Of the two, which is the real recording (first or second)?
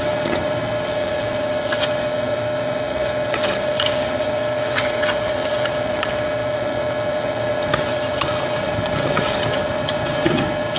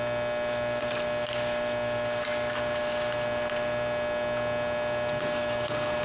second